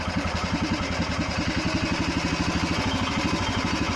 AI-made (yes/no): no